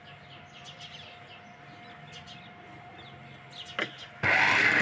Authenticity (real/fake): real